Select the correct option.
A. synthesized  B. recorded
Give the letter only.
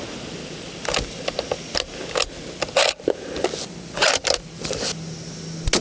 B